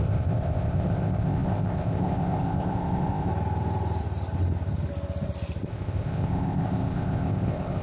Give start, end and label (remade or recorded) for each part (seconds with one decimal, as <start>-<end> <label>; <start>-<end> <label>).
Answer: 0.0-3.3 remade; 3.3-5.7 recorded; 5.7-7.8 remade